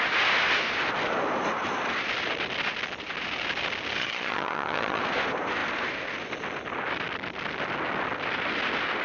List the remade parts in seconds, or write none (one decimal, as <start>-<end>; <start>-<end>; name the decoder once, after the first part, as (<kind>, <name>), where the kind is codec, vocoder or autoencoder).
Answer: 4.0-5.0 (vocoder, HiFi-GAN)